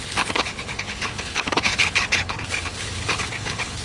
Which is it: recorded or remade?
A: remade